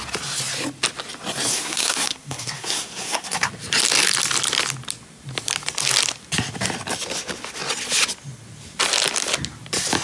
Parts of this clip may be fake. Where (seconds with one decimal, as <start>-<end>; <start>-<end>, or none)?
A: 1.5-3.5